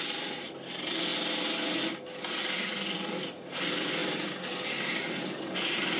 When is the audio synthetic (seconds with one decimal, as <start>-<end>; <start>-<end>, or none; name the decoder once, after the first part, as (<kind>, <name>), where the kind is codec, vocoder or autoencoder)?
0.0-1.1 (vocoder, BigVGAN v2); 2.4-6.0